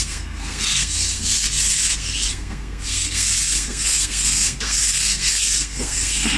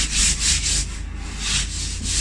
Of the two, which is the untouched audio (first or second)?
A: second